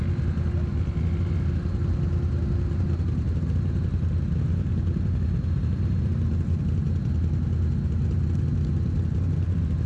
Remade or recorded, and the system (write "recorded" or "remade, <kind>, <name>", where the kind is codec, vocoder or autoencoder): recorded